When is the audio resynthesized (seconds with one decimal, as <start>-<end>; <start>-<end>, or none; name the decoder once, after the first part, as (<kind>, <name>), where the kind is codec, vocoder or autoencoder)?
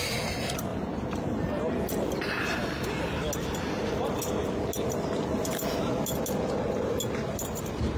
none